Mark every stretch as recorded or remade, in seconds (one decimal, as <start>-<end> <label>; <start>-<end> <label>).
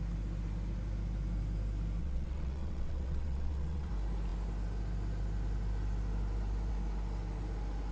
0.0-2.0 recorded; 2.0-3.9 remade; 3.9-7.9 recorded